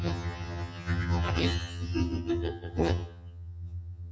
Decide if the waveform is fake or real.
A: fake